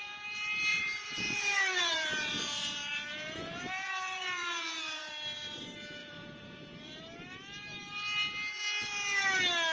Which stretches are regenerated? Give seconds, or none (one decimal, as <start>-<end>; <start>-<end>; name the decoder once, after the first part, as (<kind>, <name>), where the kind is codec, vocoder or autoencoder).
0.7-5.1 (vocoder, Vocos); 6.0-7.0